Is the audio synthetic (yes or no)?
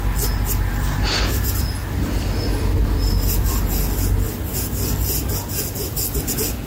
no